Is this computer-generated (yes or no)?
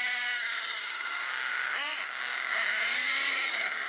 yes